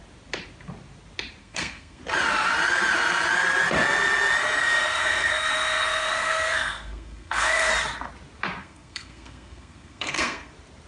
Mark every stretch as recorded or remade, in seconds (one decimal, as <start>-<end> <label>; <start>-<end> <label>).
0.0-1.4 recorded; 1.4-2.0 remade; 2.0-4.6 recorded; 4.6-7.7 remade; 7.7-8.6 recorded; 8.6-10.5 remade; 10.5-10.9 recorded